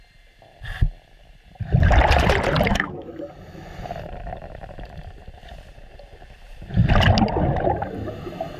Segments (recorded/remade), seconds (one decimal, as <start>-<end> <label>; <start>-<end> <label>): 0.0-2.7 recorded; 2.7-3.2 remade; 3.2-8.6 recorded

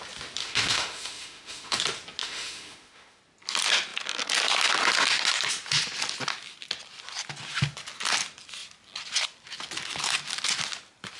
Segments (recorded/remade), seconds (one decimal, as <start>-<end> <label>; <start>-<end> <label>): 0.0-0.4 recorded; 0.4-1.8 remade; 1.8-2.2 recorded; 2.2-3.2 remade; 3.2-11.2 recorded

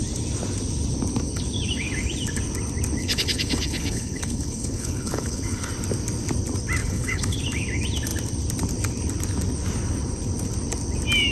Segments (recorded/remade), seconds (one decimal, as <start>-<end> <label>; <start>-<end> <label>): 0.0-3.0 recorded; 3.0-5.7 remade; 5.7-6.8 recorded; 6.8-7.4 remade; 7.4-11.3 recorded